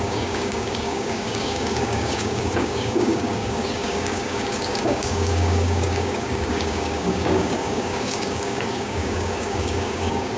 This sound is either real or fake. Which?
fake